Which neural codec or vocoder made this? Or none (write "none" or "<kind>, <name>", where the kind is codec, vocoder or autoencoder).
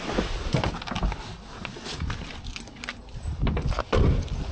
none